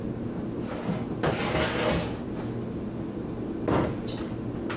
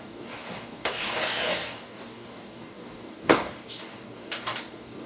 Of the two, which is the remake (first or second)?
second